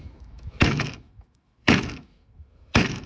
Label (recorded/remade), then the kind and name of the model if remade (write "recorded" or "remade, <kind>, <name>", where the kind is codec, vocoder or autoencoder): remade, autoencoder, DAC-VAE